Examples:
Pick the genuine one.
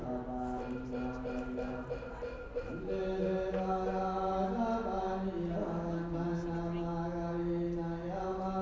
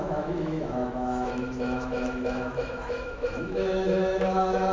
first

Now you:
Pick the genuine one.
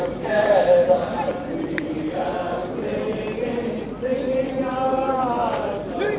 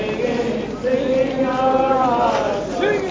second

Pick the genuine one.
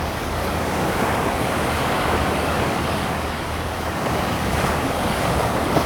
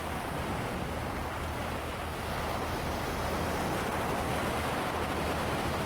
second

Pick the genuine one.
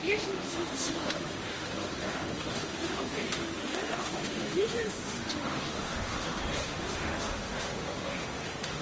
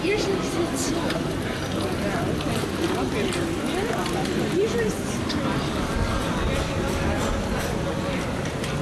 second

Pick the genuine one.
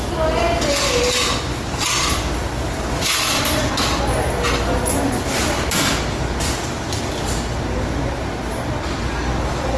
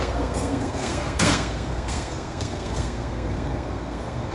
first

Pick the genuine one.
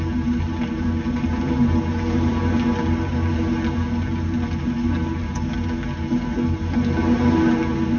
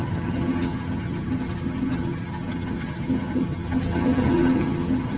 first